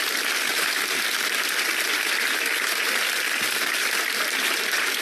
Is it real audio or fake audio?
real